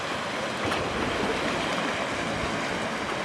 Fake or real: real